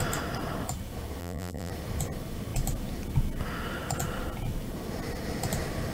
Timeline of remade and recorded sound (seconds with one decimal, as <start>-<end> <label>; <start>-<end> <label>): 0.0-1.2 recorded; 1.2-1.7 remade; 1.7-5.9 recorded